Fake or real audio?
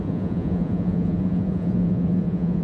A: fake